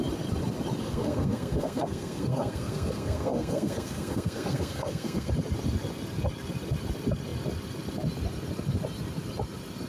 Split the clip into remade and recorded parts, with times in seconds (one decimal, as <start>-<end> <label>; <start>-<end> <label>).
0.0-0.8 recorded; 0.8-5.3 remade; 5.3-9.9 recorded